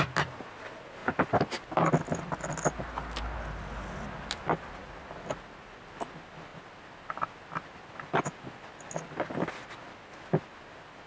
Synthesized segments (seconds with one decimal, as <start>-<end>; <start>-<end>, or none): none